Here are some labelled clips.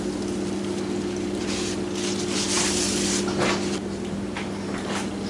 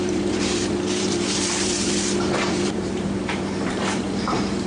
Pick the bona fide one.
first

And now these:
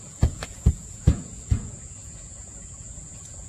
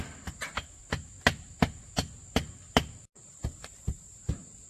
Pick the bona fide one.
second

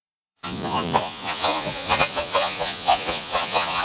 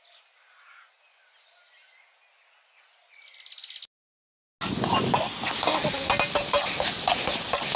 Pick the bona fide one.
second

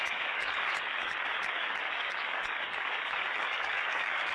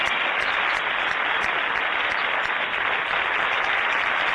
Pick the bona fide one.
second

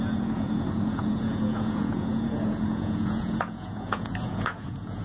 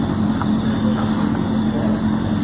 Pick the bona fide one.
second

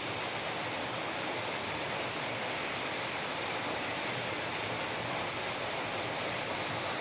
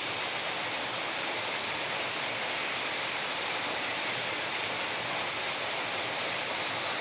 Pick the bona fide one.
first